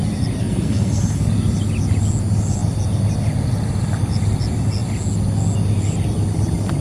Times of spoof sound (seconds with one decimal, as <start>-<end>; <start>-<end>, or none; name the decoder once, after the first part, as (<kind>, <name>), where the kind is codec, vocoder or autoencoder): 0.4-1.2 (codec, SNAC)